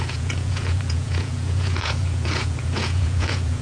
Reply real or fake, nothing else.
fake